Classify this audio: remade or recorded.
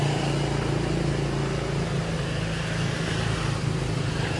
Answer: recorded